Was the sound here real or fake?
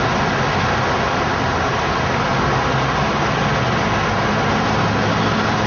real